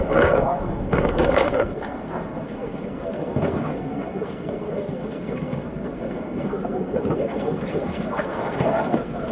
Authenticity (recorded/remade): remade